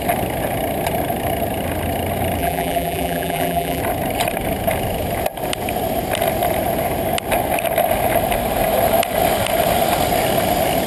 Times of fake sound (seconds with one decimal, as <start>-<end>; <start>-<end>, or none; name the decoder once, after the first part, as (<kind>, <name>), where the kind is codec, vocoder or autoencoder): 2.4-3.8 (vocoder, BigVGAN v2)